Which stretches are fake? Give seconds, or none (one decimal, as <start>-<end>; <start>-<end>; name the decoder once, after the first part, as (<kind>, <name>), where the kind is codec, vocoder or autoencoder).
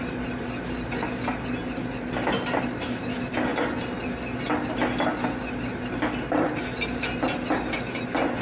none